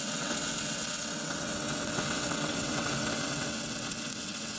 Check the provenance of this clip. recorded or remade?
remade